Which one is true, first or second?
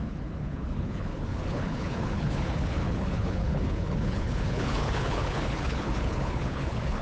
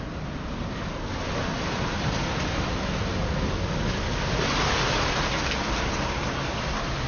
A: second